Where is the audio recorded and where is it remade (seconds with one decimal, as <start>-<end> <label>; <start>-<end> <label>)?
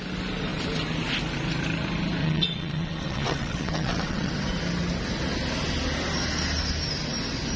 0.0-2.2 recorded; 2.2-4.3 remade; 4.3-7.6 recorded